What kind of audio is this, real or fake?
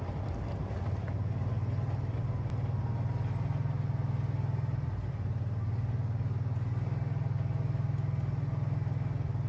real